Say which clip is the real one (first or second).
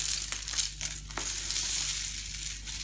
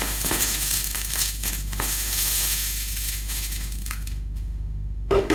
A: first